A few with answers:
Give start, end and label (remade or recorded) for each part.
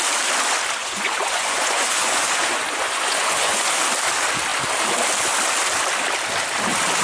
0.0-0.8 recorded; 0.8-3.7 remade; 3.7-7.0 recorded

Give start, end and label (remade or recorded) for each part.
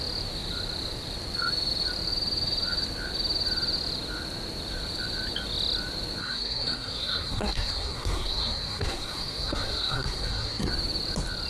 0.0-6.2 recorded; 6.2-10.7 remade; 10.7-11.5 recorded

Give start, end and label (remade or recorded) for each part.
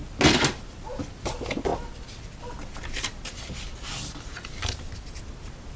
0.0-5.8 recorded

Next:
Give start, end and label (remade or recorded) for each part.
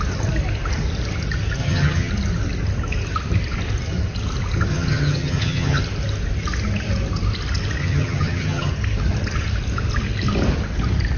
0.0-1.6 recorded; 1.6-2.1 remade; 2.1-4.7 recorded; 4.7-5.8 remade; 5.8-7.8 recorded; 7.8-8.7 remade; 8.7-11.2 recorded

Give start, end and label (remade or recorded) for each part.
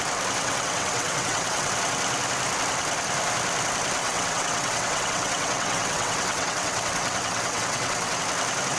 0.0-0.4 recorded; 0.4-1.7 remade; 1.7-4.0 recorded; 4.0-8.2 remade; 8.2-8.8 recorded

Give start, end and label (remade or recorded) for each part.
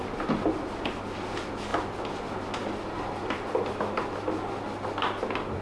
0.0-5.6 recorded